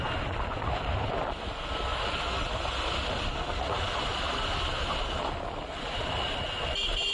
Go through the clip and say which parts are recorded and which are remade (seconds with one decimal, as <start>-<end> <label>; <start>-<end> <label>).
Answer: 0.0-7.1 recorded

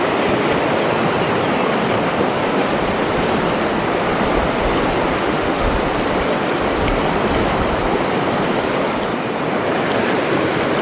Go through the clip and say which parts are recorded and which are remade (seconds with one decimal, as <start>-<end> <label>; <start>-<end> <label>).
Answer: 0.0-5.2 recorded; 5.2-5.7 remade; 5.7-10.8 recorded

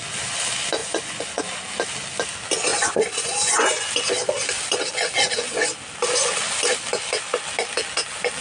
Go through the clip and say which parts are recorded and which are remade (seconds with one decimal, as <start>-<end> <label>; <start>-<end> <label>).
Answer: 0.0-0.8 recorded; 0.8-1.4 remade; 1.4-2.7 recorded; 2.7-3.9 remade; 3.9-8.4 recorded

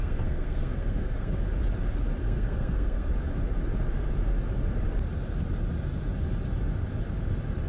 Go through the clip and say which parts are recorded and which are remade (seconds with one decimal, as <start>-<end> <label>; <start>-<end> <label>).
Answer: 0.0-1.3 remade; 1.3-2.2 recorded; 2.2-3.1 remade; 3.1-7.7 recorded

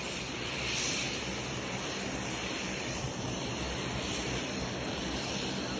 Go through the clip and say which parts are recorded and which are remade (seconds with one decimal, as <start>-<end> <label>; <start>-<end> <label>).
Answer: 0.0-0.5 remade; 0.5-2.0 recorded; 2.0-5.8 remade

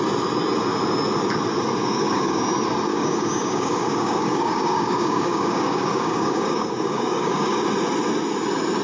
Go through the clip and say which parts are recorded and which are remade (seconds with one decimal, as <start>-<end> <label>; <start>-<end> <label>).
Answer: 0.0-1.8 recorded; 1.8-2.4 remade; 2.4-2.9 recorded; 2.9-7.6 remade; 7.6-8.8 recorded

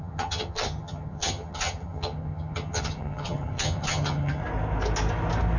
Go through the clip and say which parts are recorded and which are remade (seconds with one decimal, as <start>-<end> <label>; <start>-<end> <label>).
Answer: 0.0-4.4 remade; 4.4-5.6 recorded

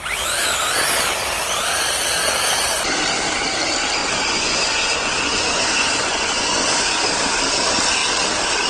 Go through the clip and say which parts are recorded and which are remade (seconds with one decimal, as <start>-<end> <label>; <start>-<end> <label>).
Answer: 0.0-4.0 recorded; 4.0-7.1 remade; 7.1-8.7 recorded